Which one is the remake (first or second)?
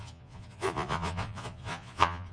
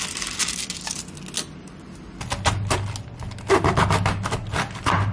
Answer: first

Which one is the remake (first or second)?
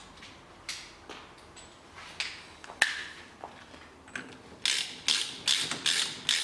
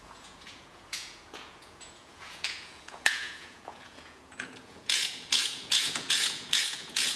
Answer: second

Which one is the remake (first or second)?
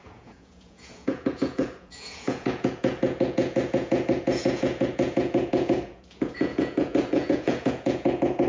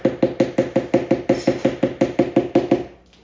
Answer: first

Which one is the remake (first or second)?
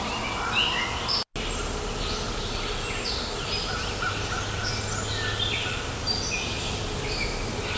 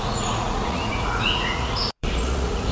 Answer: second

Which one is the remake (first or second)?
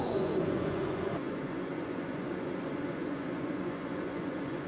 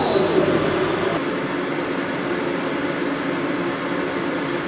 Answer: first